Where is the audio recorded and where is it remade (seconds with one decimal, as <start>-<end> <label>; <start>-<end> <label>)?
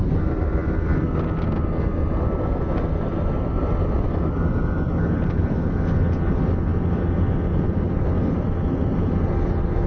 0.0-9.9 recorded